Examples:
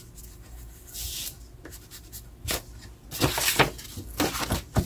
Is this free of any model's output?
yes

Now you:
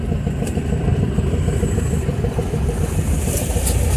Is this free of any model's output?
no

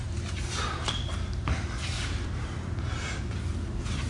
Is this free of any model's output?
no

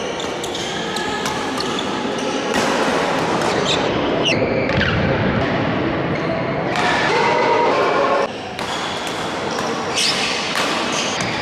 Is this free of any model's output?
yes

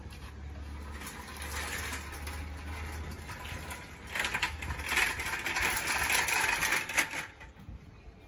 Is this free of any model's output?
yes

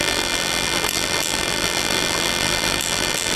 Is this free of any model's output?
no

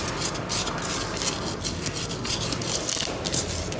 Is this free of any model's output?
yes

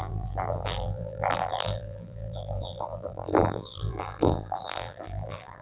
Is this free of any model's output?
no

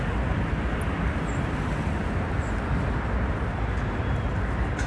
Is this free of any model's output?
yes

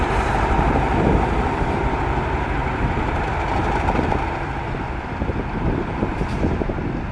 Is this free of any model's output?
no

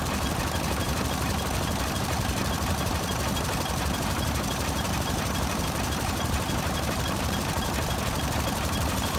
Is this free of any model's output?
no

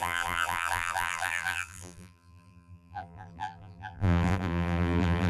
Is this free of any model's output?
no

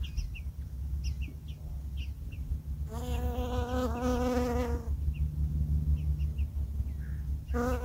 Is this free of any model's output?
yes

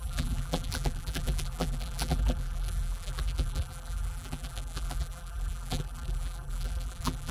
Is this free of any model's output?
no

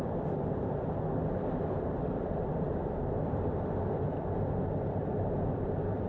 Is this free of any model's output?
no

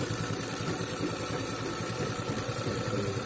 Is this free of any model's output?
no